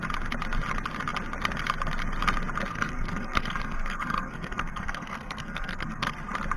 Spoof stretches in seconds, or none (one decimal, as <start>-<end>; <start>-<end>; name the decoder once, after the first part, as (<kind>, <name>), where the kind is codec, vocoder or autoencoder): 2.7-6.1 (codec, SNAC)